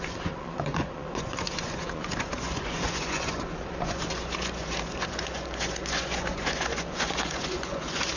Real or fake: fake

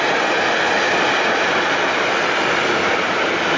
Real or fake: real